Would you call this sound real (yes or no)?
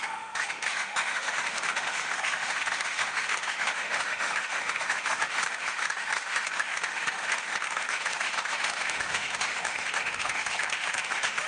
no